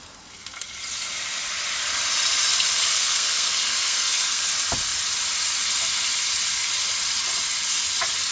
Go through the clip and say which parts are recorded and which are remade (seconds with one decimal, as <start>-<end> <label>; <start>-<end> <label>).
0.0-2.9 recorded; 2.9-4.4 remade; 4.4-8.3 recorded